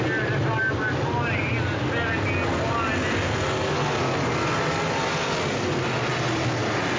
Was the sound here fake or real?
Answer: real